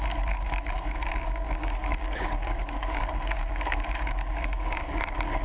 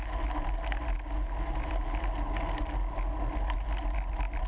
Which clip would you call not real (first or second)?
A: first